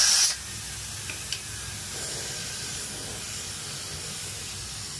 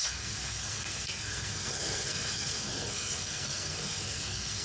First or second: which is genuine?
first